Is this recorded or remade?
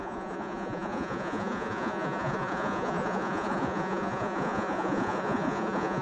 remade